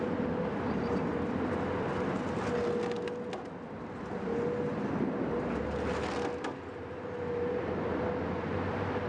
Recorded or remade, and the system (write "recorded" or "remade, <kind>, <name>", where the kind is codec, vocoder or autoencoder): recorded